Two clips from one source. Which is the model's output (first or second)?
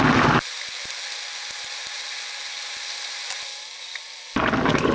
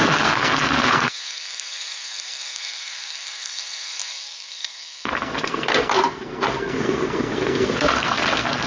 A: second